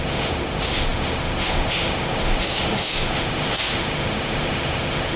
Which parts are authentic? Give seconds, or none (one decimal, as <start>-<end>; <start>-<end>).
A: none